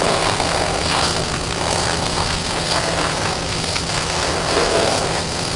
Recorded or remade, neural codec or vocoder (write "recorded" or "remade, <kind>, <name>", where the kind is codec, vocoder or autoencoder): remade, codec, SNAC